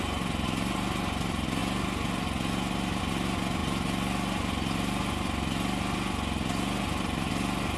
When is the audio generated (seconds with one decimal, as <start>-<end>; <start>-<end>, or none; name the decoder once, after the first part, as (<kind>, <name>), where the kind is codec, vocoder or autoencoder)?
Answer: none